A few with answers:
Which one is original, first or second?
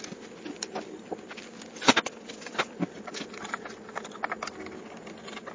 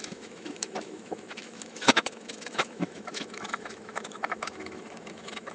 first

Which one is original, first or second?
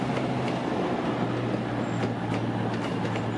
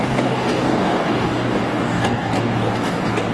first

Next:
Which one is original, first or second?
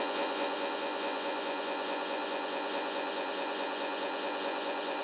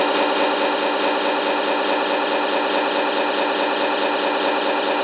second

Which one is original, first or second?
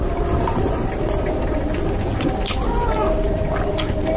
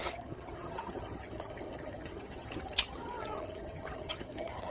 first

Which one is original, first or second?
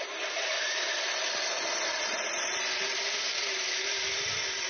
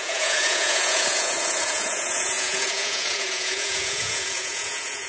first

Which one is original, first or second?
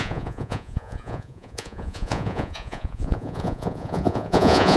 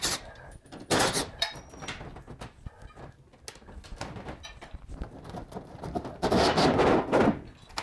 second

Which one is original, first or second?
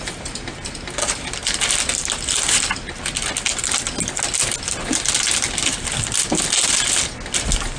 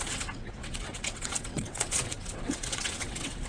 first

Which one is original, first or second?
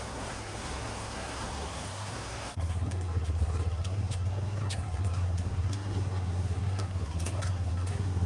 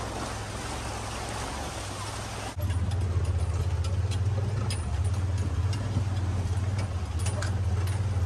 second